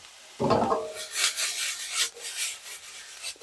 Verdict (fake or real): real